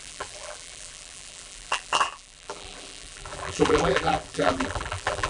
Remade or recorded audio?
remade